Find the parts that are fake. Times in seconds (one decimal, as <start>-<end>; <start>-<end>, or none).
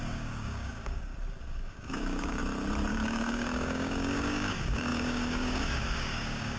0.0-1.1; 1.6-2.4; 2.9-6.6